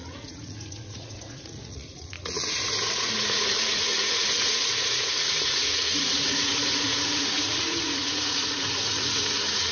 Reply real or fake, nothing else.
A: fake